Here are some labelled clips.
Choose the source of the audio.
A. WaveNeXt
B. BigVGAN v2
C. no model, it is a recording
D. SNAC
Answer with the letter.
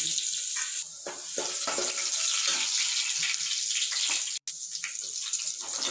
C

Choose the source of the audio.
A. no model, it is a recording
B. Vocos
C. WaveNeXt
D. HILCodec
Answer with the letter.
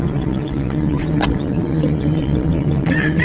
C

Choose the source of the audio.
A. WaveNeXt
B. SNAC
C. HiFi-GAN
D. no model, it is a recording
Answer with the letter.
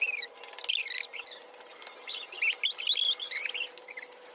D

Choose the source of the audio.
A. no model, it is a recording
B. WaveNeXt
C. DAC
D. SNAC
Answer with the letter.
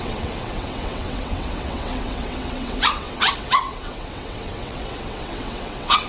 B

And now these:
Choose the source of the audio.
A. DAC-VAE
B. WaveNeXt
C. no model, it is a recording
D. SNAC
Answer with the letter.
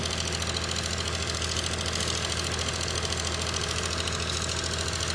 C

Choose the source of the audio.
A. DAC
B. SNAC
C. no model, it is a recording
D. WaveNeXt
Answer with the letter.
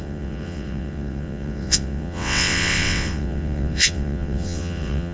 D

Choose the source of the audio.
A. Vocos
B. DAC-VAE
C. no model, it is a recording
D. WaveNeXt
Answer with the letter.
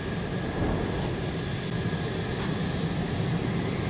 C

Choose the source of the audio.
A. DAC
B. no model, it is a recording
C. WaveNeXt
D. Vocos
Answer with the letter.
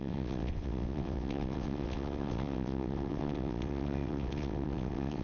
C